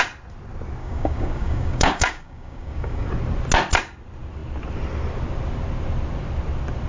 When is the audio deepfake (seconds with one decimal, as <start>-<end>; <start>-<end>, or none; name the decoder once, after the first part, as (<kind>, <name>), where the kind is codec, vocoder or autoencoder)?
0.8-3.1 (codec, DAC)